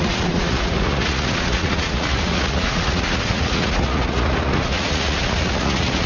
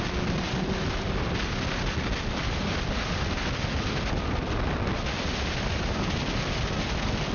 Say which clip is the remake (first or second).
first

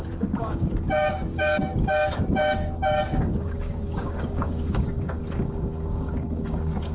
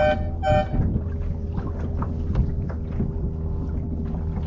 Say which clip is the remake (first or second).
first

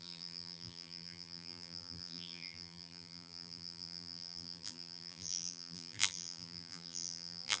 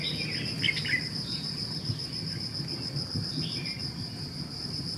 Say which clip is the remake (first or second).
first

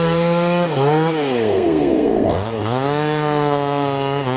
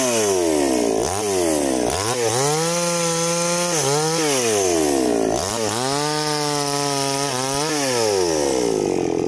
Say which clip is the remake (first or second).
first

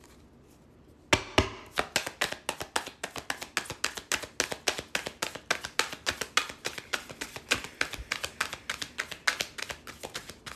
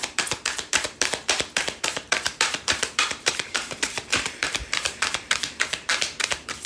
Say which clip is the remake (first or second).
second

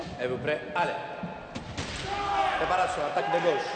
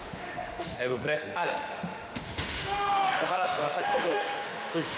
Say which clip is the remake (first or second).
second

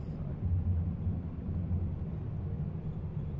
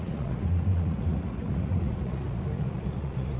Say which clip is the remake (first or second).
second